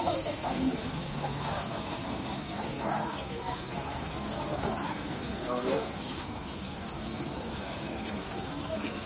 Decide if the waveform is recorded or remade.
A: remade